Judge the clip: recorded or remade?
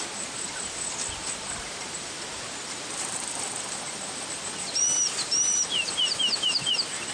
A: remade